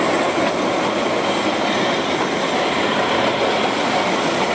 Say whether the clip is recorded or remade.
recorded